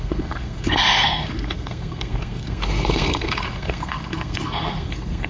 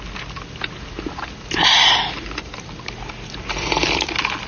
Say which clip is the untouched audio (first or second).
second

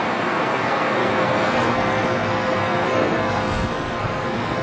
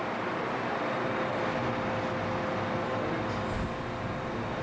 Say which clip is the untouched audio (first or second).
second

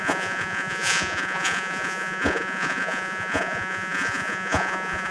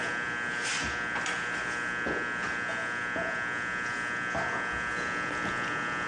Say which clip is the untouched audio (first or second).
second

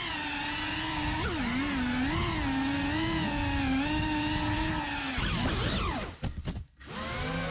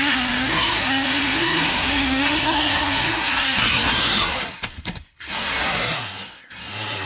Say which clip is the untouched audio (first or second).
first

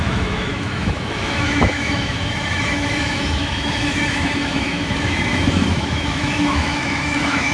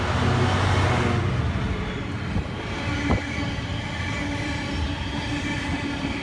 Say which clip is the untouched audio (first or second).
second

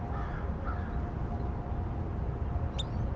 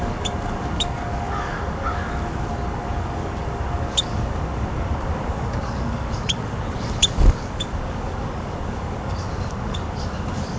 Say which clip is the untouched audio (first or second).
first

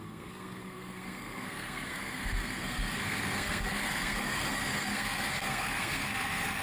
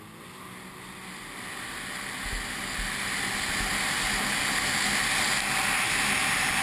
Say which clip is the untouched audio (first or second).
second